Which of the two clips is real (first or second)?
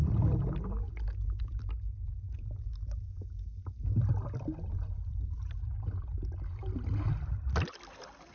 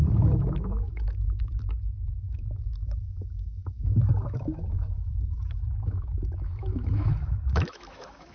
first